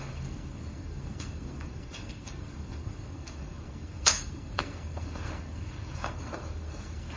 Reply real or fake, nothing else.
fake